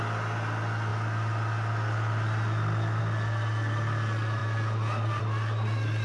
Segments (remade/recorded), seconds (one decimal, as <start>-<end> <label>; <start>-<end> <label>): 0.0-6.0 recorded